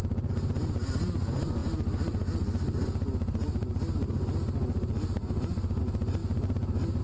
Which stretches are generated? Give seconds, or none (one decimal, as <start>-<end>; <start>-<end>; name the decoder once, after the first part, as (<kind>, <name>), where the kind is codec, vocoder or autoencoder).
none